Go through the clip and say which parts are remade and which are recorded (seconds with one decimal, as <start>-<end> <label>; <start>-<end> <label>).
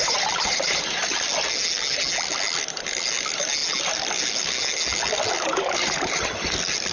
0.0-1.1 remade; 1.1-5.5 recorded; 5.5-6.2 remade; 6.2-6.9 recorded